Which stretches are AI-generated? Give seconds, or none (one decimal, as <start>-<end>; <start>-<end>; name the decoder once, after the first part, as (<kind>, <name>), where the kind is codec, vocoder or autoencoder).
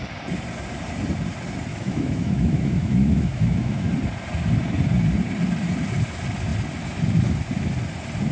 1.7-3.9 (autoencoder, DAC-VAE)